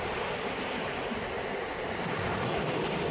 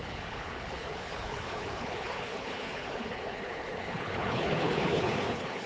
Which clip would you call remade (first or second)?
second